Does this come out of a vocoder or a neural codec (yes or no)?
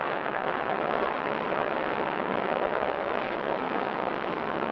yes